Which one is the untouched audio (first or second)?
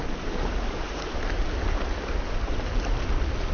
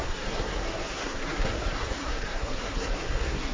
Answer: first